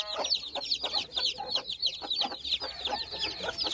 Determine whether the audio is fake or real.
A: real